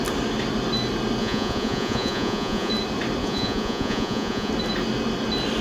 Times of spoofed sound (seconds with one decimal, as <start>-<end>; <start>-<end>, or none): 1.2-2.7; 3.2-4.5